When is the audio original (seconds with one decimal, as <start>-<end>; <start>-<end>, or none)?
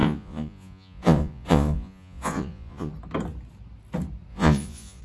2.9-4.3